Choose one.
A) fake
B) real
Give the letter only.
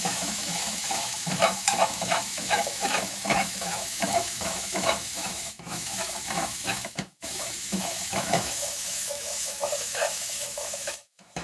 A